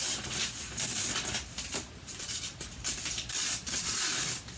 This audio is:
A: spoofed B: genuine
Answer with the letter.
B